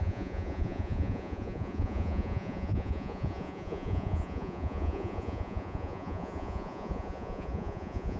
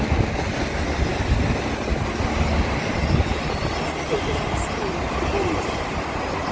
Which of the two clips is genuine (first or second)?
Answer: second